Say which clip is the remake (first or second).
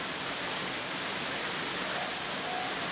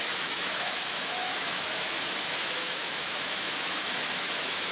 second